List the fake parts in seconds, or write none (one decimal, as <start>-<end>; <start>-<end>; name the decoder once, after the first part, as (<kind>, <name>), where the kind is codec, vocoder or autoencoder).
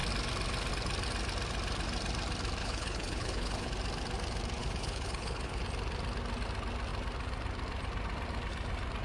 2.6-3.7 (codec, HILCodec); 4.6-5.6